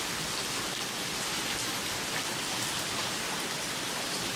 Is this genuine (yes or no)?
yes